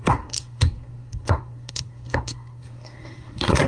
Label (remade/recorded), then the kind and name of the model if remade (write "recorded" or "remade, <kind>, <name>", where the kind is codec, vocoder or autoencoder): remade, codec, SNAC